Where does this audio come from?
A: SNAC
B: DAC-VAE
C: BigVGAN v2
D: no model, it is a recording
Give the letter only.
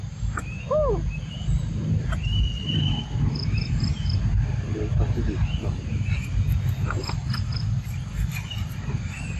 D